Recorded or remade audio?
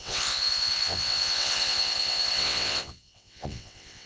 remade